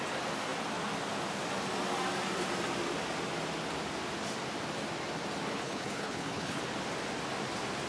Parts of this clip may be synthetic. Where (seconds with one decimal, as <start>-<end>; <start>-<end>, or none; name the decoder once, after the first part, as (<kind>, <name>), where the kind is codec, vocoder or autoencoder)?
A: 5.5-6.6 (codec, HILCodec)